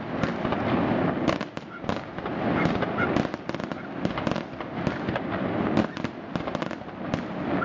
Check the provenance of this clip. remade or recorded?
recorded